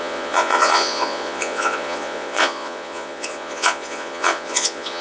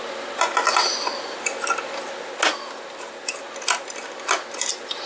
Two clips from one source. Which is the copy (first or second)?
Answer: first